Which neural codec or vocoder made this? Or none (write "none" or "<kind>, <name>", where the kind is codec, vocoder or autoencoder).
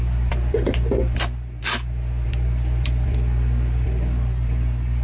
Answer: none